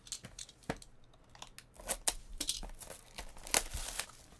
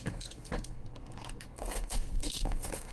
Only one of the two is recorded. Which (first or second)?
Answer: first